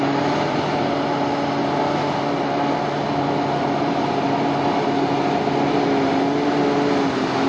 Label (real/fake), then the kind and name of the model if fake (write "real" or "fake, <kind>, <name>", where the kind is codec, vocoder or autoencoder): real